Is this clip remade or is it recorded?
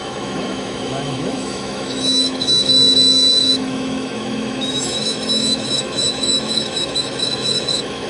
remade